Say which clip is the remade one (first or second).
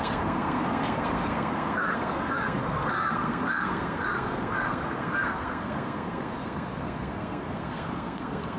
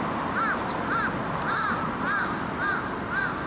first